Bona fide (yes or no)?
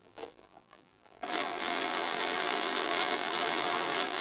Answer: no